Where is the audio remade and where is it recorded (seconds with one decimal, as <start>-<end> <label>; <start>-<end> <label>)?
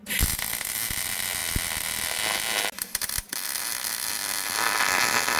0.0-5.4 recorded